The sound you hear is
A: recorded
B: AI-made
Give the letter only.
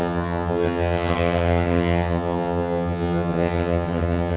B